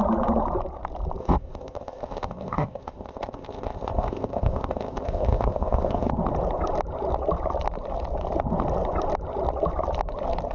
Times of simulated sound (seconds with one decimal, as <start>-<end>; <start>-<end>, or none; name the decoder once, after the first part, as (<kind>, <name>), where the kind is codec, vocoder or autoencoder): 1.2-6.1 (codec, ZipCodec)